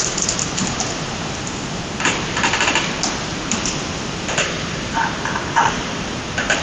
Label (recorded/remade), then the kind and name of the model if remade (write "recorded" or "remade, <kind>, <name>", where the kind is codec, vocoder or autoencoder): remade, vocoder, BigVGAN v2